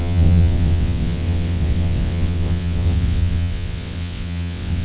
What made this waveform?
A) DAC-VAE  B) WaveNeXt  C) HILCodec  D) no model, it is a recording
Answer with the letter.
B